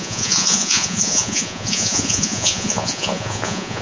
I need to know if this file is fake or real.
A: fake